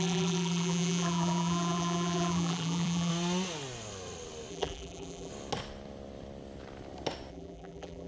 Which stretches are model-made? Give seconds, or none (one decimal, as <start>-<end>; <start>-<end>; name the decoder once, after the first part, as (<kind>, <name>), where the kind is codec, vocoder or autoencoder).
0.0-3.1 (vocoder, BigVGAN v2); 4.5-5.3; 7.3-8.1